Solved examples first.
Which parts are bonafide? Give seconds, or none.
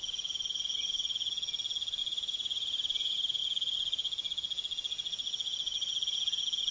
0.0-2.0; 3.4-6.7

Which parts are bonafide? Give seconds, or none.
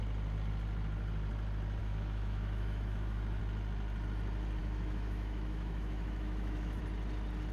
0.0-1.8; 3.4-4.6; 6.8-7.5